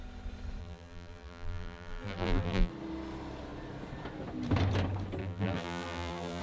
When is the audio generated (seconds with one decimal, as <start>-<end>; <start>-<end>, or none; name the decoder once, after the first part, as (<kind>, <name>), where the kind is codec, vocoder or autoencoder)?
0.6-2.7 (vocoder, BigVGAN v2); 5.2-6.4